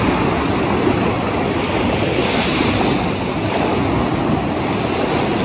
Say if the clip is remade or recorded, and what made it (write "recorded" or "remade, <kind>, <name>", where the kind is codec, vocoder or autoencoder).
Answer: recorded